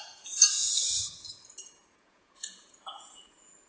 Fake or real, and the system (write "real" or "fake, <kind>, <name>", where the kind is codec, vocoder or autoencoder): fake, vocoder, Vocos